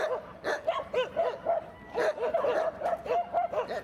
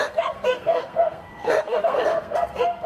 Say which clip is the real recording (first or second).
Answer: first